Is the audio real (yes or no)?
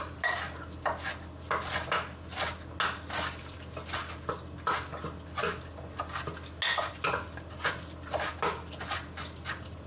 yes